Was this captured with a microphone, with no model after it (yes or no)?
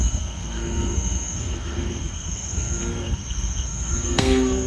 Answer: no